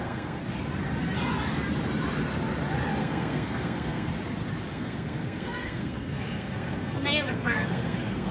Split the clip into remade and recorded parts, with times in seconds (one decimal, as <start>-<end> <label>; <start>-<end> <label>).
0.0-0.4 remade; 0.4-3.0 recorded; 3.0-4.1 remade; 4.1-4.7 recorded; 4.7-8.3 remade